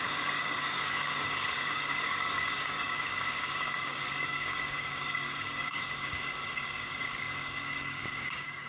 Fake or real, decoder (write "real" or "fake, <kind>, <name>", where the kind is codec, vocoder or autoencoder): fake, codec, DAC